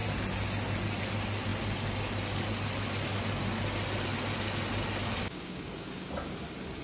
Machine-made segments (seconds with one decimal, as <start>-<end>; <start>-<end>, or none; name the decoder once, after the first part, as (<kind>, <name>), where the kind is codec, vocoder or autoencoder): 5.2-6.1 (codec, DAC)